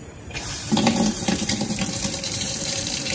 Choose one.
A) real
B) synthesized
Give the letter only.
B